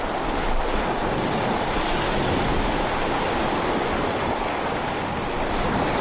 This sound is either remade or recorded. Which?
recorded